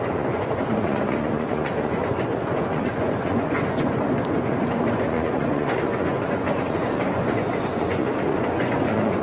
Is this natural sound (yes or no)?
no